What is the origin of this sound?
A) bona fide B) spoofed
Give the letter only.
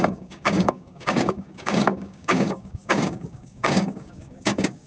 B